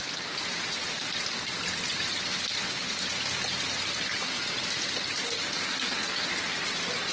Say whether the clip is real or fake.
real